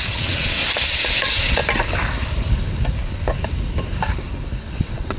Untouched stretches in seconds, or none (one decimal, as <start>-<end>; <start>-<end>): 0.6-1.2; 1.6-4.7